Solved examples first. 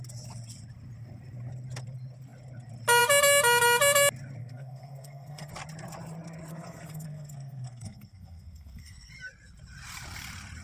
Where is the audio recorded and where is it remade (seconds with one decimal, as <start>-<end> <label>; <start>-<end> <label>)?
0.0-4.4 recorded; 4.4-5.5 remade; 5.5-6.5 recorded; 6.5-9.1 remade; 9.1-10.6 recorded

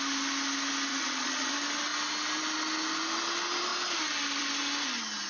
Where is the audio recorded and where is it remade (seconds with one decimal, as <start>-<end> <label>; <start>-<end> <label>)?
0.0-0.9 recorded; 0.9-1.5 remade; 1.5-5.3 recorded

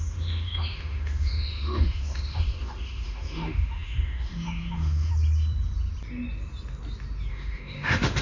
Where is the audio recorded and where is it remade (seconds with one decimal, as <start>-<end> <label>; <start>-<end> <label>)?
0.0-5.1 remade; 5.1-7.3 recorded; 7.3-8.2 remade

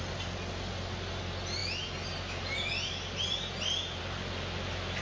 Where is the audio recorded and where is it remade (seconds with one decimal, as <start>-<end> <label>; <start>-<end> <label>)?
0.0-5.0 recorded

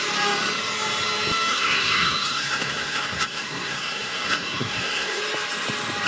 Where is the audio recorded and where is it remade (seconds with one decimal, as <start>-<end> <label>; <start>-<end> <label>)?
0.0-1.5 recorded; 1.5-5.2 remade; 5.2-6.1 recorded

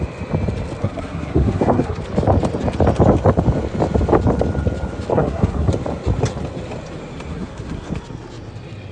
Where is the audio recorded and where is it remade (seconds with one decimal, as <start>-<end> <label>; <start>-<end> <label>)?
0.0-0.8 recorded; 0.8-2.0 remade; 2.0-5.1 recorded; 5.1-5.7 remade; 5.7-7.3 recorded; 7.3-7.9 remade; 7.9-8.9 recorded